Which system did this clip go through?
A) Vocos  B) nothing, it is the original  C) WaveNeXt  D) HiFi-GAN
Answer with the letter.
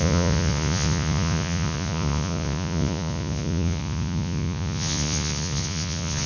A